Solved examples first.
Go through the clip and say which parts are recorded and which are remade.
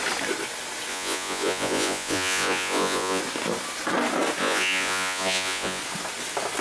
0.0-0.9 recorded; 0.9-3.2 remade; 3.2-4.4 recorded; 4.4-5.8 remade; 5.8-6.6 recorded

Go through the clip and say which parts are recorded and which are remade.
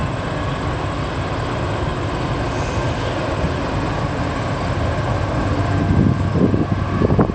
0.0-7.3 recorded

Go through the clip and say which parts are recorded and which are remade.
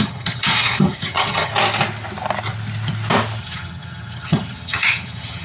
0.0-1.5 remade; 1.5-3.4 recorded; 3.4-5.4 remade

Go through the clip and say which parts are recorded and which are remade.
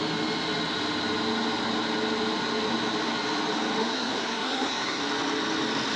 0.0-3.8 recorded; 3.8-5.0 remade; 5.0-6.0 recorded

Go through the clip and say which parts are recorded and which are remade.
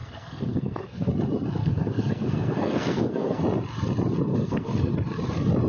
0.0-1.1 remade; 1.1-1.6 recorded; 1.6-3.4 remade; 3.4-4.3 recorded; 4.3-4.9 remade; 4.9-5.7 recorded